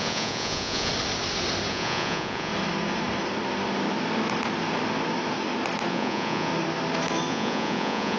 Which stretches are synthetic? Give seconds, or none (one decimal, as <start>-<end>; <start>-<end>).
0.0-0.9; 1.7-2.5; 5.9-6.5; 7.3-8.2